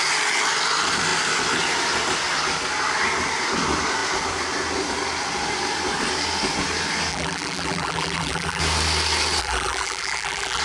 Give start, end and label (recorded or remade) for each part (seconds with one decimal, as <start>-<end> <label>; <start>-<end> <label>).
0.0-7.1 recorded; 7.1-8.6 remade; 8.6-9.4 recorded; 9.4-10.6 remade